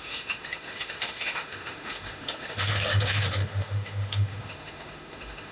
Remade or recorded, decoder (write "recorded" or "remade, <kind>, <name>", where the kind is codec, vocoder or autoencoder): remade, autoencoder, DAC-VAE